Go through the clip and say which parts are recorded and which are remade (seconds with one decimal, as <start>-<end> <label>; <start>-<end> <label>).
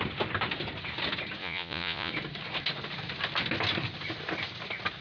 0.0-1.4 recorded; 1.4-2.1 remade; 2.1-5.0 recorded